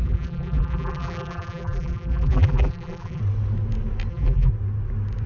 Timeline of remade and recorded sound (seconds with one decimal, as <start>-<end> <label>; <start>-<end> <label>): 0.0-3.2 remade; 3.2-4.1 recorded; 4.1-4.5 remade; 4.5-5.3 recorded